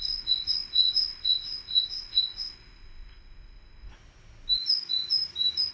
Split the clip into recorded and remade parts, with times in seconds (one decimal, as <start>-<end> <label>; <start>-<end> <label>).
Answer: 0.0-3.9 remade; 3.9-5.7 recorded